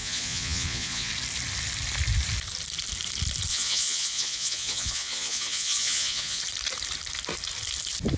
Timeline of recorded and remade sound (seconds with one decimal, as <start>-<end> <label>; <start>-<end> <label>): 0.0-1.1 remade; 1.1-3.5 recorded; 3.5-6.4 remade; 6.4-8.2 recorded